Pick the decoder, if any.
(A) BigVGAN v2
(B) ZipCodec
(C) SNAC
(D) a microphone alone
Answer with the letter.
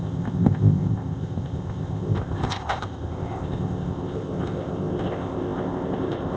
B